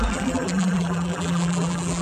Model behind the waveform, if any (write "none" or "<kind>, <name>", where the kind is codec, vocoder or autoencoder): vocoder, BigVGAN v2